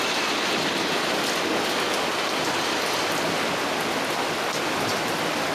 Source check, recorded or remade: recorded